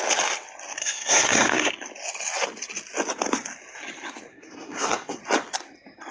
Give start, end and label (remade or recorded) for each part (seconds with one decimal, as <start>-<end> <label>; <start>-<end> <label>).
0.0-0.8 recorded; 0.8-1.7 remade; 1.7-4.3 recorded; 4.3-5.2 remade; 5.2-6.1 recorded